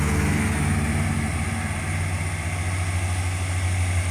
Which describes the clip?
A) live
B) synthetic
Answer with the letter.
A